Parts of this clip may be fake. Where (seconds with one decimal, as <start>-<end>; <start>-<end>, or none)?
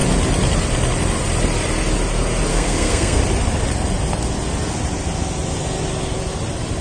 2.5-3.2